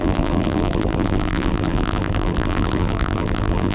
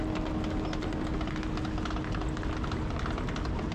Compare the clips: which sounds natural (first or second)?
second